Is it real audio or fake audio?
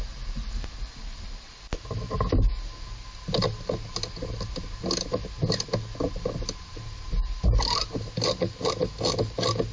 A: real